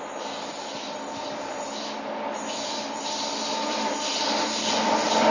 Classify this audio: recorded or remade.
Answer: recorded